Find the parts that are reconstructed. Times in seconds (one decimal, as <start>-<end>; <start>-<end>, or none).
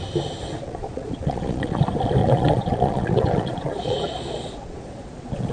0.4-1.8; 2.2-5.5